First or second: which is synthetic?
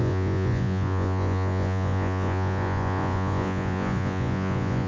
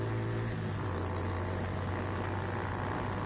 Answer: first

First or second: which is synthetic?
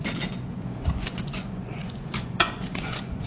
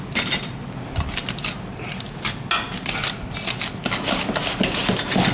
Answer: first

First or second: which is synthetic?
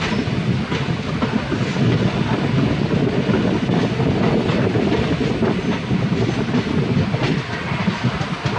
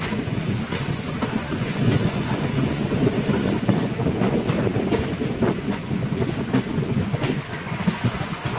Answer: second